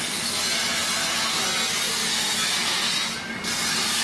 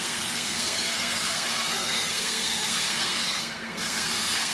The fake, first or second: second